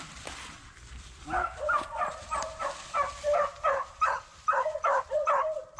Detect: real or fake fake